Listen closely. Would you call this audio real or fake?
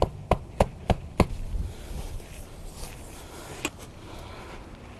real